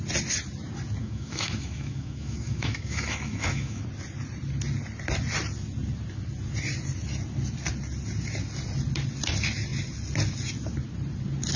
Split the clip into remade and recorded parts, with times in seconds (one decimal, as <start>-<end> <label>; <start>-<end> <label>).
0.0-1.0 recorded; 1.0-3.8 remade; 3.8-11.6 recorded